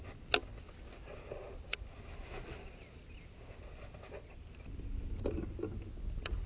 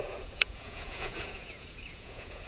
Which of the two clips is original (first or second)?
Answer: first